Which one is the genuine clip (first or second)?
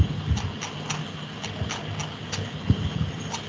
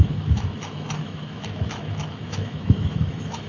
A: first